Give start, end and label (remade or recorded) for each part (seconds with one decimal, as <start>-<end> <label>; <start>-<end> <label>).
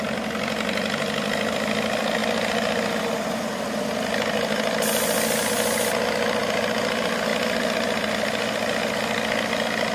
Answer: 0.0-9.9 recorded